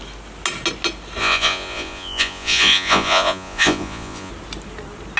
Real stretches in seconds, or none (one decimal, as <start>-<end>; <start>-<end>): 0.0-1.2; 4.3-5.2